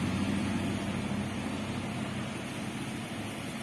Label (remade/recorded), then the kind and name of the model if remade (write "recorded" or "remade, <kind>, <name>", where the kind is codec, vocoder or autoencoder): recorded